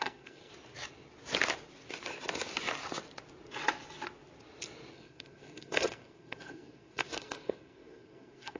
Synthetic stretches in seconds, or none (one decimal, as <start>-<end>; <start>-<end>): 0.0-0.5; 4.9-8.6